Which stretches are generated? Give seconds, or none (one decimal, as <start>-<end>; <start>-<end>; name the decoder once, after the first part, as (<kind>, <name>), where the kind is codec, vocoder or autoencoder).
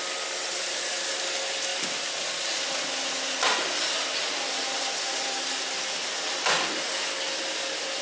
none